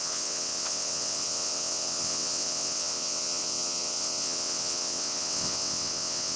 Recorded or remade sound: remade